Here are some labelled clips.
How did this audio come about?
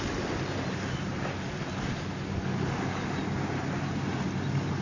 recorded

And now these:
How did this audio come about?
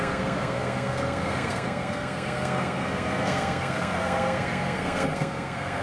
remade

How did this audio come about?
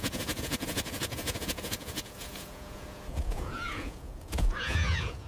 remade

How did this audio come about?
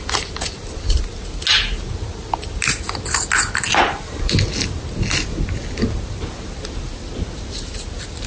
recorded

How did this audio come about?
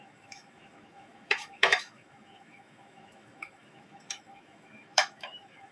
remade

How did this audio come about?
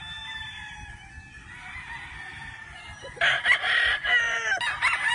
recorded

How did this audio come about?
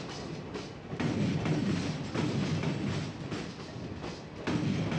recorded